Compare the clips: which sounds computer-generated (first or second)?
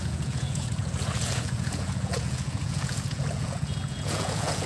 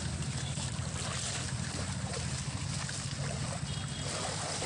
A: first